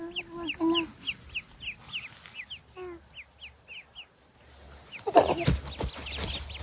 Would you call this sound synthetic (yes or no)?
no